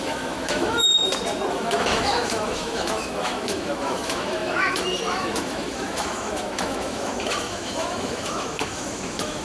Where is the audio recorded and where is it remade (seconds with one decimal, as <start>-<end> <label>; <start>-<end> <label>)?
0.0-0.9 remade; 0.9-1.5 recorded; 1.5-9.4 remade